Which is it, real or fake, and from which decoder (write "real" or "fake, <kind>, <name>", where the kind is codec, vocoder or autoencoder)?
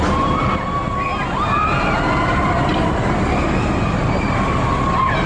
real